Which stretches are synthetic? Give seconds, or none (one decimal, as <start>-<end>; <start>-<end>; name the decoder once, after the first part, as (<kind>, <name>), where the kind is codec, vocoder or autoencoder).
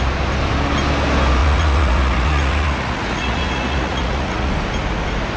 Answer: 1.4-4.5 (vocoder, Vocos)